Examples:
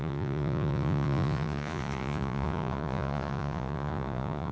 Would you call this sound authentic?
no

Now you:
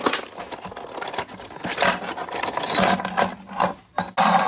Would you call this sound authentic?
yes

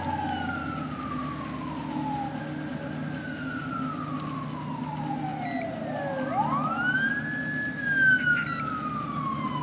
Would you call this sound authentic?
yes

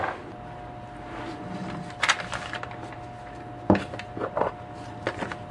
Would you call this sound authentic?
yes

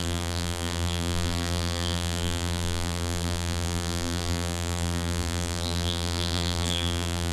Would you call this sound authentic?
no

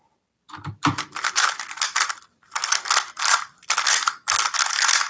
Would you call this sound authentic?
yes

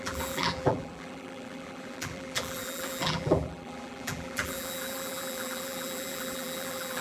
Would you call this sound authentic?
no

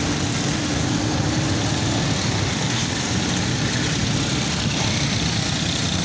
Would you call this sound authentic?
yes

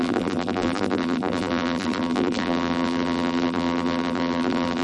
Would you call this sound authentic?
no